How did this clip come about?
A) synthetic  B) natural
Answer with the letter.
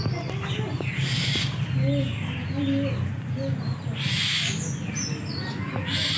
B